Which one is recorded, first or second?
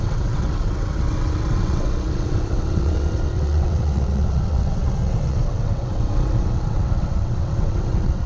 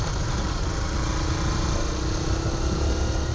second